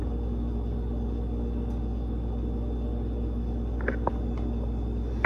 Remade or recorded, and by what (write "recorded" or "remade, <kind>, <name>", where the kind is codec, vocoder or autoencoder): recorded